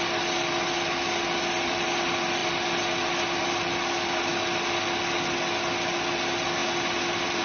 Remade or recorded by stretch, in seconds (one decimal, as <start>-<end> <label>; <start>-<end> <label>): 0.0-7.4 recorded